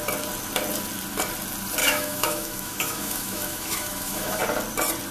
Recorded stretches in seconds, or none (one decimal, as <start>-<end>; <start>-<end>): 0.0-1.8; 4.4-5.1